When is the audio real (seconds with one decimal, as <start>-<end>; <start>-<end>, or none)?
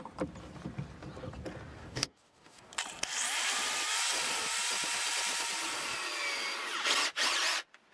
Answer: 0.0-1.8; 2.7-7.9